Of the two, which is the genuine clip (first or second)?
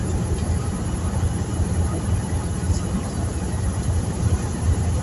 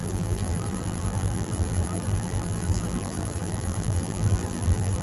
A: first